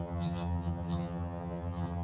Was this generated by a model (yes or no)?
yes